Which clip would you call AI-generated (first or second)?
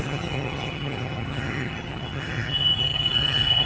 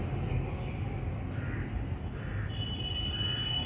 first